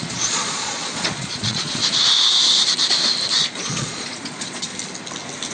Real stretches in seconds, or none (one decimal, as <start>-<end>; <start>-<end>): 1.8-3.3; 4.7-5.5